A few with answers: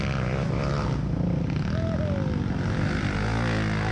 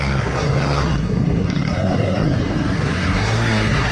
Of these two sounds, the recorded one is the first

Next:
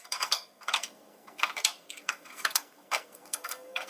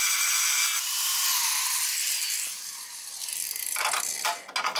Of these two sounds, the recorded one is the second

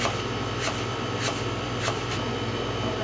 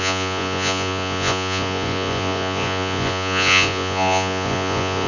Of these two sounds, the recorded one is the first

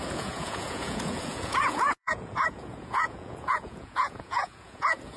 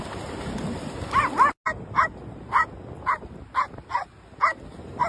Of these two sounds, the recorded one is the second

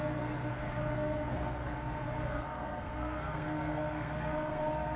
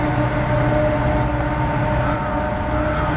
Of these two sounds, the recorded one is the second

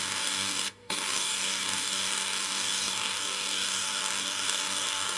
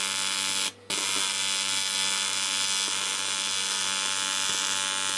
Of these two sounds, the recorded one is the second